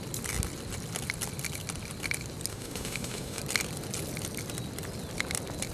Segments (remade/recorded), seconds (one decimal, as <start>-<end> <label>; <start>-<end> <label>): 0.0-2.5 recorded; 2.5-3.4 remade; 3.4-5.7 recorded